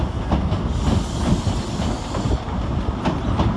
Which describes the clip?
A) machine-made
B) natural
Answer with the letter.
B